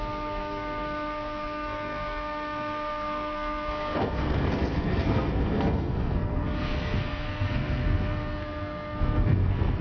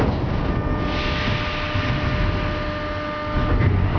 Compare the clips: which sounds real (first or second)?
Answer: second